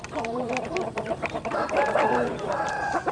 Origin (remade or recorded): remade